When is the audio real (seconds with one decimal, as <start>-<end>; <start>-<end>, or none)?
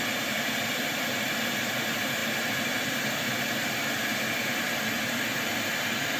0.0-6.2